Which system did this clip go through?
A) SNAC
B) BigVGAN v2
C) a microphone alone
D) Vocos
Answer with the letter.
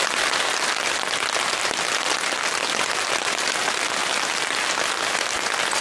C